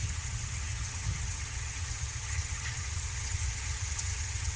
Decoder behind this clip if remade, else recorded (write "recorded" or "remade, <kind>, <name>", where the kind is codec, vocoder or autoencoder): remade, vocoder, HiFi-GAN